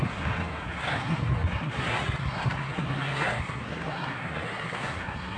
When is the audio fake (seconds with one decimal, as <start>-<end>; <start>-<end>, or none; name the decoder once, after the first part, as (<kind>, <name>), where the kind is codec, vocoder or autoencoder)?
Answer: 0.0-5.4 (codec, SNAC)